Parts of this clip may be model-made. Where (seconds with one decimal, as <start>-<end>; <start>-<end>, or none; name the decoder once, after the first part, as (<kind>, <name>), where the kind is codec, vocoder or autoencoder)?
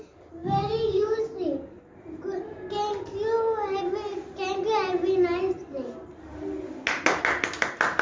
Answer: 0.4-1.2 (codec, DAC)